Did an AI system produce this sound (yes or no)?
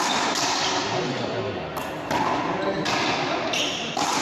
no